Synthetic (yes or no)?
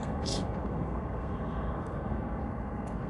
yes